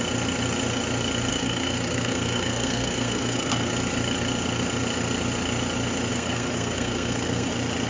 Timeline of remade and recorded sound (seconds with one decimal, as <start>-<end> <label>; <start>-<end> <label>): 0.0-1.3 recorded; 1.3-3.7 remade; 3.7-6.1 recorded; 6.1-7.5 remade; 7.5-7.9 recorded